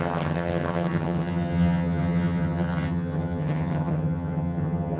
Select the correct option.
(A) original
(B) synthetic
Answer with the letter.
B